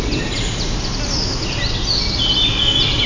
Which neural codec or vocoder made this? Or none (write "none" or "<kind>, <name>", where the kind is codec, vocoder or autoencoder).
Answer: none